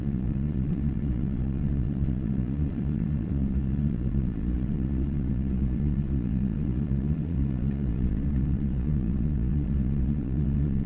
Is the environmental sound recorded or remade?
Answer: remade